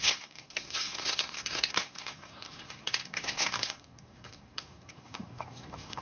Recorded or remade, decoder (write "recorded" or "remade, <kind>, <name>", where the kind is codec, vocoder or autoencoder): remade, codec, SNAC